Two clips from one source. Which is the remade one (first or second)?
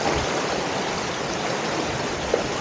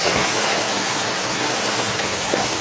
second